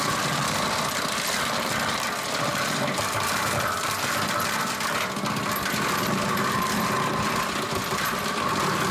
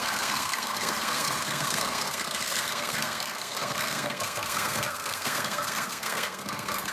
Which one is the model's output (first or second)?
second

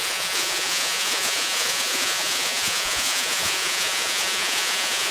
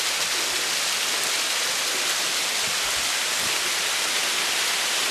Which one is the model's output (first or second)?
first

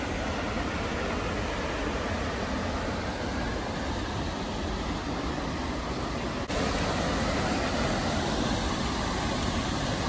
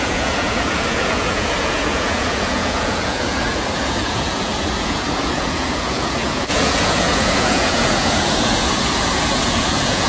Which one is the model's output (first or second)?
second